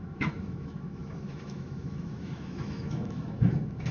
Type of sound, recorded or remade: remade